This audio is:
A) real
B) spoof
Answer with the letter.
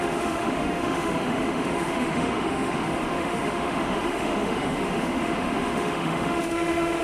B